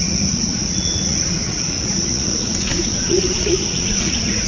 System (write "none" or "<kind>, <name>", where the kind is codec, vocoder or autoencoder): vocoder, Vocos